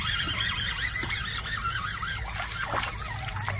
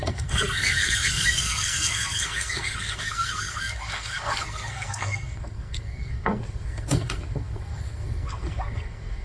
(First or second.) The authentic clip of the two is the first